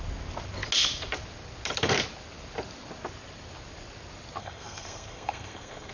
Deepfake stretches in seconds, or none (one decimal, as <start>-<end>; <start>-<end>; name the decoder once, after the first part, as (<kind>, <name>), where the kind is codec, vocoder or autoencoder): 4.4-5.9 (codec, SNAC)